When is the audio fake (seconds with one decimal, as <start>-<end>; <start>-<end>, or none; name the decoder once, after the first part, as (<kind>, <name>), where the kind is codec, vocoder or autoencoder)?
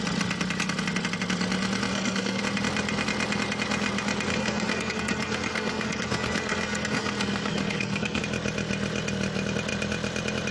1.9-2.4 (codec, SNAC); 4.3-8.2